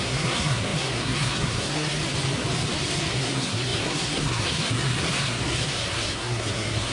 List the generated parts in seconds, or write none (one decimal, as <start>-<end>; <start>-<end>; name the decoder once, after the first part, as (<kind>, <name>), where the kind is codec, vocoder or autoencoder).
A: 0.0-2.0 (codec, SNAC); 3.1-6.9